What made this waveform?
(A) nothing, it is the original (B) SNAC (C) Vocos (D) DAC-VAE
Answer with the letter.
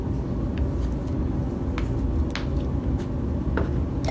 A